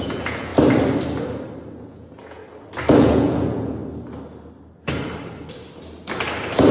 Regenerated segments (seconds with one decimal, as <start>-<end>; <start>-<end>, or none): 0.0-0.5; 1.7-2.4; 3.0-3.8